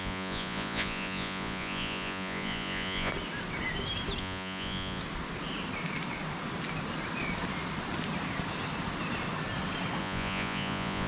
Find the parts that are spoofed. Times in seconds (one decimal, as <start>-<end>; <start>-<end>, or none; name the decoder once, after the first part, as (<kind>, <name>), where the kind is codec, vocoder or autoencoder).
0.0-3.1 (vocoder, Vocos); 4.2-5.0; 10.0-11.1